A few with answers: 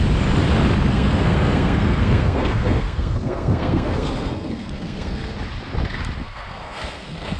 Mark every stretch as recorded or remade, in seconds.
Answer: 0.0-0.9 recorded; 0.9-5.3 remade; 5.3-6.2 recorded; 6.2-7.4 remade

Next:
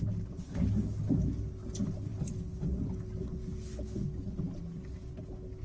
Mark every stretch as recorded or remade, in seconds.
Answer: 0.0-5.6 recorded